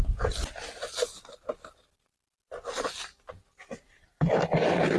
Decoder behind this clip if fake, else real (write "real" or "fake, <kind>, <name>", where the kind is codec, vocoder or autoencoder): real